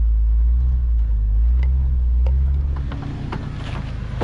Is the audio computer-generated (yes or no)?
no